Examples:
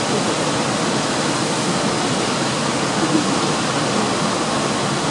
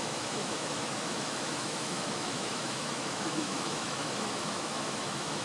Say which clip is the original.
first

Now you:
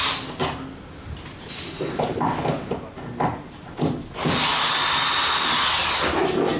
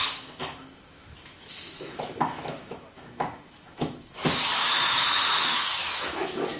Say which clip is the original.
first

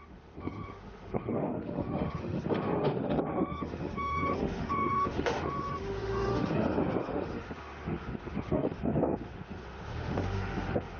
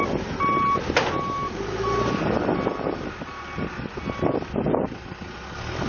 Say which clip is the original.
second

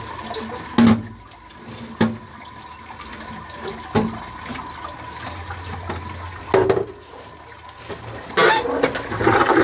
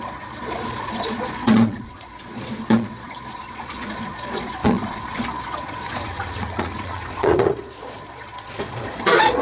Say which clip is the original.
first